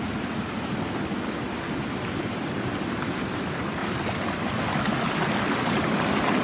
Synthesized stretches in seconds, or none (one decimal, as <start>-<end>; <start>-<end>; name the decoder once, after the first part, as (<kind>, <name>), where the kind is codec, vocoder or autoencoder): none